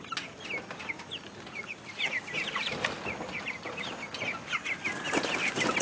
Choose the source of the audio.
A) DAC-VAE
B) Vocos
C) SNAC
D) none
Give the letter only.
D